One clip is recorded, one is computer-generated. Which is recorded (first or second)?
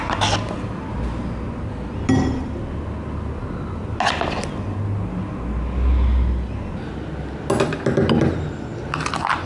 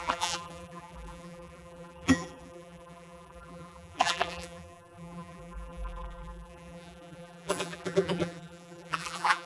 first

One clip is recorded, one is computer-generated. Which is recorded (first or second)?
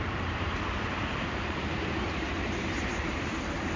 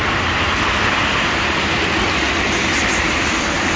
second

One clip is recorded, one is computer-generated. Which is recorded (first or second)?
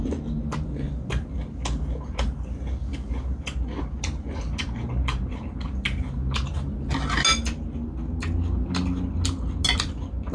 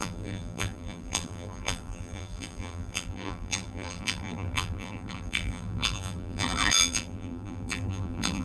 first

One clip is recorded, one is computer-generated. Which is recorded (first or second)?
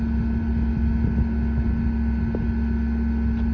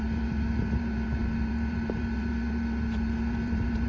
first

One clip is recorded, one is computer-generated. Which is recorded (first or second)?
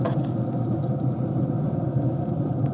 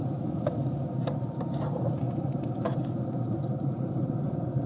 first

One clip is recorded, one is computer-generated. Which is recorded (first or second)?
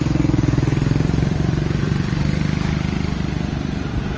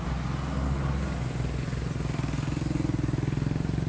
second